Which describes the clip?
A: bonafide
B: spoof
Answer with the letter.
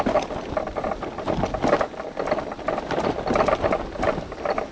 A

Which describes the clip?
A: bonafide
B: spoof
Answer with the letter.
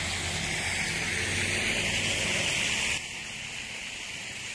A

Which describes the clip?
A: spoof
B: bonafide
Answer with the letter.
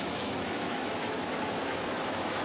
A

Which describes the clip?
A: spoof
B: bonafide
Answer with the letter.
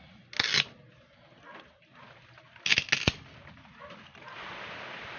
B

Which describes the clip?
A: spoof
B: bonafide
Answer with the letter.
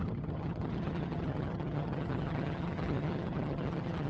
A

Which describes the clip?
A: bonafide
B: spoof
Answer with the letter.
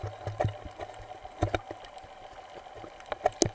A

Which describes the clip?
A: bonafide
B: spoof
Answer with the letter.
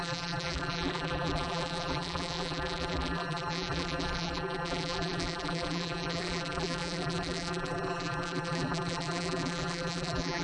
B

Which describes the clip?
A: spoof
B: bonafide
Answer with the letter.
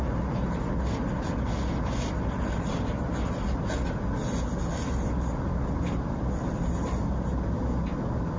B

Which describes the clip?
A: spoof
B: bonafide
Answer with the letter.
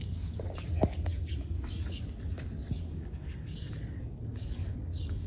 A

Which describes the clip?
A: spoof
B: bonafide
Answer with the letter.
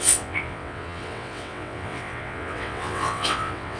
A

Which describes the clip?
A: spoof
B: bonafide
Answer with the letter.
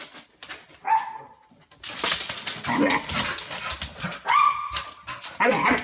B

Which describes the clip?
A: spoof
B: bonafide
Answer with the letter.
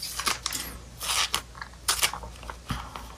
B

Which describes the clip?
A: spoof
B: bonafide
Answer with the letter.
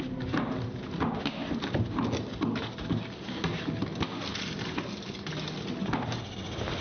B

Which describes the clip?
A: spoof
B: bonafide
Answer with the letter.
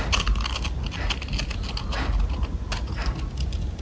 B